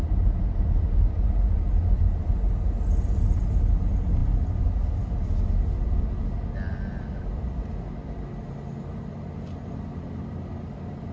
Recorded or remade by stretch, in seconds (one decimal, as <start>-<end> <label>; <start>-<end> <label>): 0.0-11.1 recorded